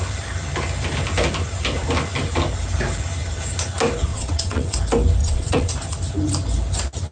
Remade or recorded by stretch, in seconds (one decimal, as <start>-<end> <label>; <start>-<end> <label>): 0.0-4.1 recorded; 4.1-4.8 remade; 4.8-5.2 recorded; 5.2-5.7 remade; 5.7-7.1 recorded